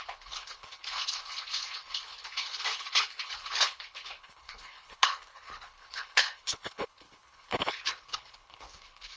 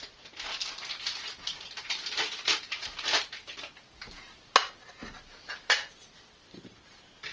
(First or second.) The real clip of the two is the second